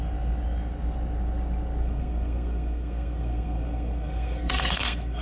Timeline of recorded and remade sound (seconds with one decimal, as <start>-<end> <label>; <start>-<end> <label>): 0.0-1.8 recorded; 1.8-5.2 remade